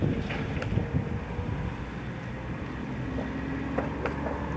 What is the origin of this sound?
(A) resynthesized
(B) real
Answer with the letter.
B